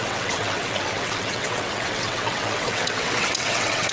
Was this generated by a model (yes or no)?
yes